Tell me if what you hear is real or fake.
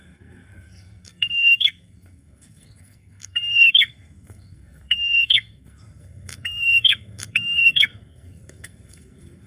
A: fake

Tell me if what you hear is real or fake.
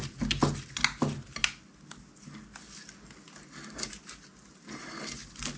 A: real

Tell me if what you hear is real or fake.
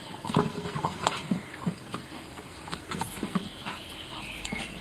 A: fake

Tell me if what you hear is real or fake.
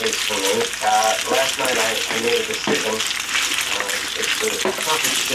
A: real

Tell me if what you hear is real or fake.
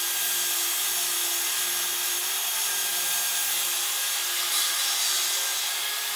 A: real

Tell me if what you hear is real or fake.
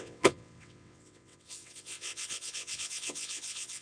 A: fake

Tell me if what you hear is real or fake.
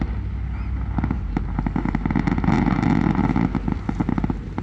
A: real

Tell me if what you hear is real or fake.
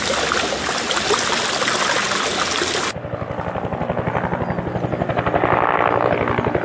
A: real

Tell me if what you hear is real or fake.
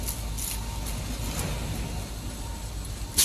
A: real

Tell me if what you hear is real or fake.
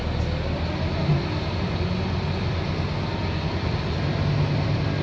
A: real